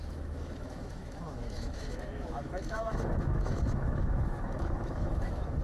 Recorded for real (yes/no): no